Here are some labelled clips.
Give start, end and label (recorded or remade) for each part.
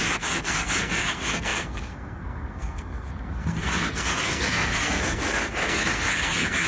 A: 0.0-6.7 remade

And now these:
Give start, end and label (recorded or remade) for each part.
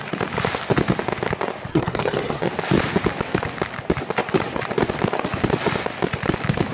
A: 0.0-1.7 recorded; 1.7-2.5 remade; 2.5-6.7 recorded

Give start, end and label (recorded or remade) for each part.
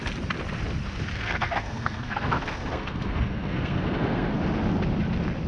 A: 0.0-1.1 recorded; 1.1-4.4 remade; 4.4-5.5 recorded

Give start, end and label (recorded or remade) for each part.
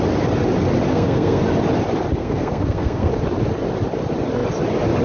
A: 0.0-0.9 recorded; 0.9-1.4 remade; 1.4-2.2 recorded; 2.2-3.1 remade; 3.1-5.0 recorded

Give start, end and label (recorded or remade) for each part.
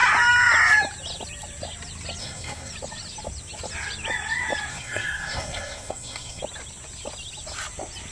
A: 0.0-2.2 recorded; 2.2-2.7 remade; 2.7-4.7 recorded; 4.7-6.4 remade; 6.4-8.1 recorded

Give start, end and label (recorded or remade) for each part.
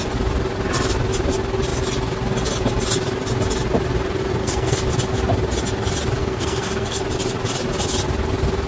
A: 0.0-4.4 recorded; 4.4-4.9 remade; 4.9-6.2 recorded; 6.2-7.0 remade; 7.0-8.7 recorded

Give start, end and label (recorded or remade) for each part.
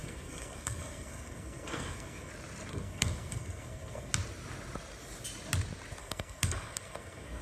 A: 0.0-2.3 remade; 2.3-2.7 recorded; 2.7-4.1 remade; 4.1-6.0 recorded; 6.0-7.4 remade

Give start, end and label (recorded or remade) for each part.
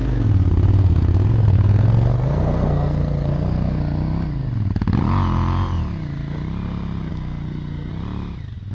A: 0.0-3.8 remade; 3.8-7.1 recorded; 7.1-7.9 remade; 7.9-8.7 recorded